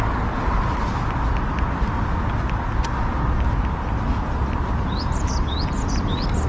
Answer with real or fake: real